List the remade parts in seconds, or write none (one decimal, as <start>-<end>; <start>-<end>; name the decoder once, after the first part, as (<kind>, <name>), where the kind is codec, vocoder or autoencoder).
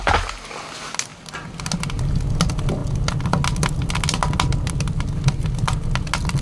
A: none